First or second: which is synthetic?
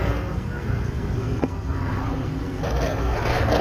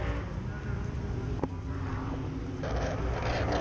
first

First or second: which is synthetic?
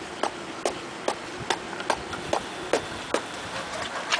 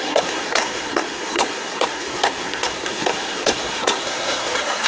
second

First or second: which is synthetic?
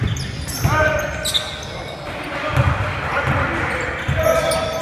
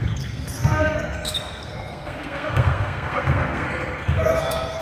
second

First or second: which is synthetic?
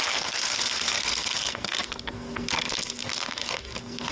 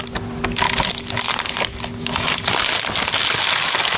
first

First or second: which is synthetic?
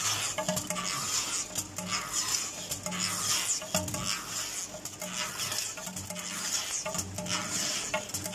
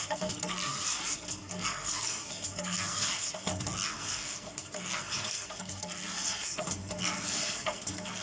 second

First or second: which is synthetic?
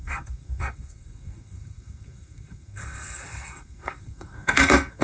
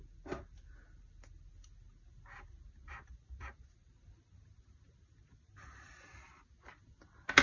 first